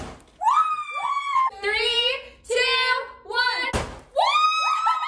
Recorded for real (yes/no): yes